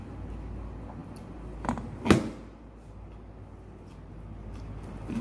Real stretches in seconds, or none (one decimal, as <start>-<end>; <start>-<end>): 0.0-5.2

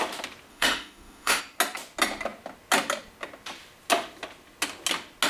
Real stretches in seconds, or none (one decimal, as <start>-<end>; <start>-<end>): 0.0-0.5; 1.4-5.3

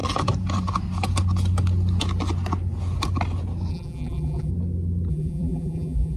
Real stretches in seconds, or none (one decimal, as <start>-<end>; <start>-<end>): 0.0-3.7; 4.5-5.1

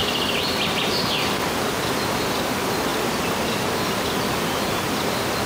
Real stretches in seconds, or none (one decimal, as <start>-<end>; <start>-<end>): 2.1-2.9; 3.7-5.5

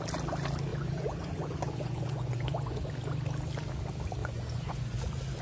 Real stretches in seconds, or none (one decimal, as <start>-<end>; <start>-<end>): 0.0-0.7; 2.9-4.2; 5.0-5.4

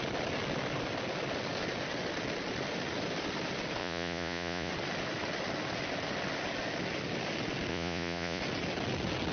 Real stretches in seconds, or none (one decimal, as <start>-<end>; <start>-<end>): 0.0-3.8; 4.7-7.7; 8.4-9.3

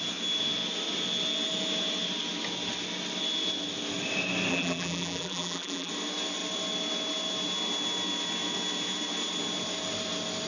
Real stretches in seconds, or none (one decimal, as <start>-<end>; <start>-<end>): 0.0-4.5; 5.9-10.5